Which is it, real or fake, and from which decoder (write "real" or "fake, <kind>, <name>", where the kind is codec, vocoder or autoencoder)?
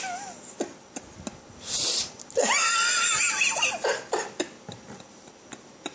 real